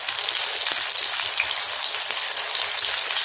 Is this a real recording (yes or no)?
yes